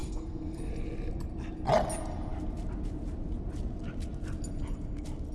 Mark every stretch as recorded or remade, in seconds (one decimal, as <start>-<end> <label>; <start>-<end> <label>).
0.0-0.7 remade; 0.7-5.3 recorded